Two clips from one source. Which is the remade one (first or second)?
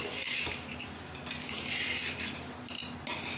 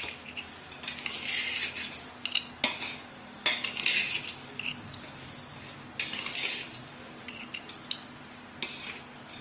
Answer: first